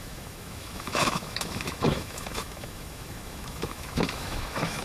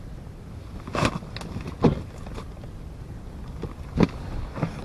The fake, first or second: first